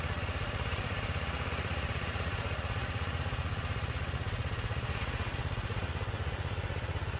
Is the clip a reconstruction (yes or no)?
yes